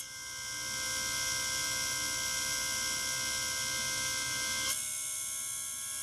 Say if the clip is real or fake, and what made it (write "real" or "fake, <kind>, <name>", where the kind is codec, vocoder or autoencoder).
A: real